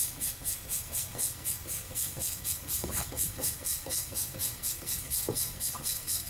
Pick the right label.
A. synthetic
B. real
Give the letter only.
A